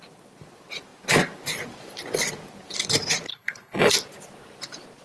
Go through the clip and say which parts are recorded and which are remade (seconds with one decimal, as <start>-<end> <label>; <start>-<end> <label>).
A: 0.0-3.3 recorded; 3.3-3.9 remade; 3.9-5.0 recorded